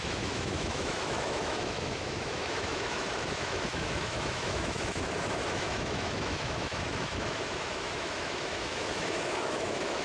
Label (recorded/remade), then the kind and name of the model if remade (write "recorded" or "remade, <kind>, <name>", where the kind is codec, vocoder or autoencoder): remade, autoencoder, DAC-VAE